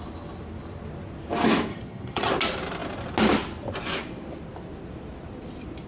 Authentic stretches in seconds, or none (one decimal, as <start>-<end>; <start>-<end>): 0.0-1.7; 2.3-5.9